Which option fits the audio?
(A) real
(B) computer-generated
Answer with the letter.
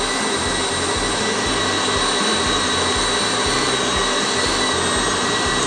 A